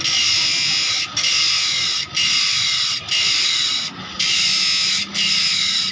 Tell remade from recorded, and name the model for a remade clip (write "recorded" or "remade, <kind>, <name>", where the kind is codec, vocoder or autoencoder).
recorded